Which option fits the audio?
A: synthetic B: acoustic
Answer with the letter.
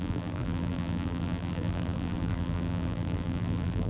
A